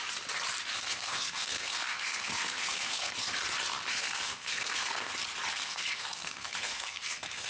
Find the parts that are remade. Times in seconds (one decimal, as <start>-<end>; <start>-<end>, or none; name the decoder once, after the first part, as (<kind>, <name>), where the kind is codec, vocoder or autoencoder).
0.7-3.1 (codec, SNAC); 3.9-5.1; 5.5-7.5